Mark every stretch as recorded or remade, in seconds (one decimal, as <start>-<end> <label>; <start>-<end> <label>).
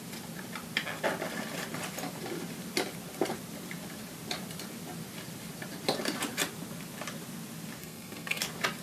0.0-7.8 recorded; 7.8-8.4 remade; 8.4-8.8 recorded